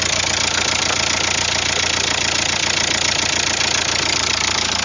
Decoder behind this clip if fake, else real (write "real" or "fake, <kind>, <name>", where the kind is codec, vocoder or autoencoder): real